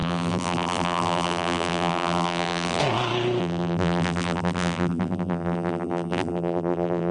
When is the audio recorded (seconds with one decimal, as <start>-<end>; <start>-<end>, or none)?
2.8-3.4

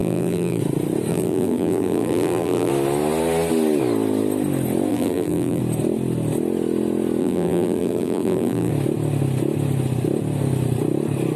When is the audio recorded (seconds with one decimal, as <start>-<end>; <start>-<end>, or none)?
0.6-1.1; 2.7-4.9; 5.6-7.2; 8.7-11.4